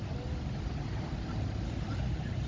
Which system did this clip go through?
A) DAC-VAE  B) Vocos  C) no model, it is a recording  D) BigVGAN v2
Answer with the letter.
C